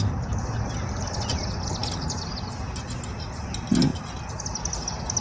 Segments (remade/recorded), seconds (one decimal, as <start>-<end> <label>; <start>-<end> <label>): 0.0-5.2 recorded